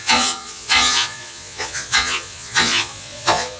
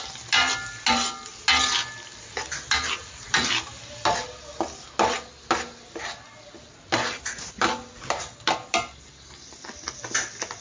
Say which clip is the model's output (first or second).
first